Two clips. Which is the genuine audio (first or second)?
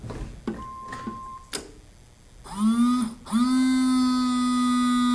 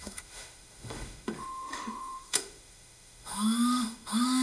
first